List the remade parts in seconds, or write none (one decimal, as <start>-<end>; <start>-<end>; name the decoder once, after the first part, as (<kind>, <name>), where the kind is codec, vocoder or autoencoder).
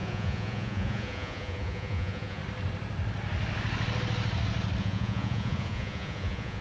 0.0-2.4 (vocoder, Vocos); 4.8-6.6